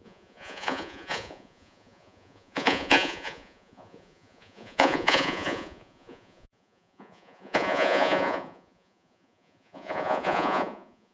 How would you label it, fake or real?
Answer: fake